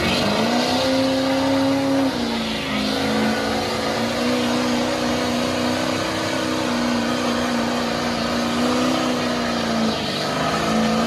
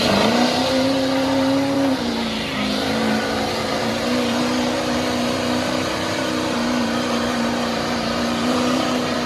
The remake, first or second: second